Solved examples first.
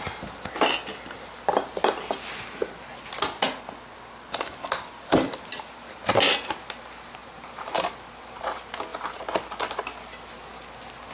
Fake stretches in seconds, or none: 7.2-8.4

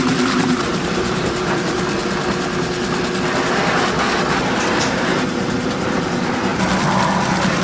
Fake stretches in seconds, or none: 0.0-2.0; 4.4-6.5

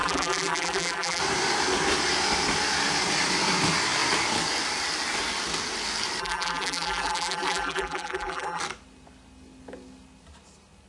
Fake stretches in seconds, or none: 0.0-1.2; 6.2-8.6

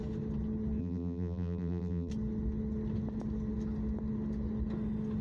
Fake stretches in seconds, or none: 0.8-2.1

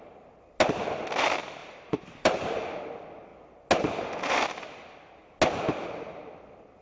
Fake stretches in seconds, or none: 1.6-2.8

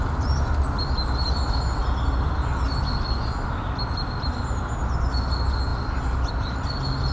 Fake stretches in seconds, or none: none

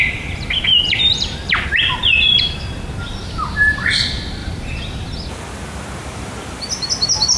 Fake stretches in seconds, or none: 4.4-5.3; 6.0-6.9